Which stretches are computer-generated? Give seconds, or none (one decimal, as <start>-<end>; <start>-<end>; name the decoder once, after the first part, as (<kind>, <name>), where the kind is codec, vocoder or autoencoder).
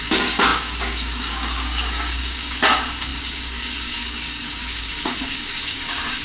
0.0-6.2 (codec, DAC)